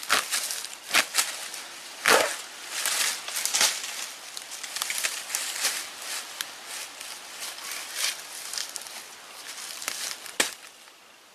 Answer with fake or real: real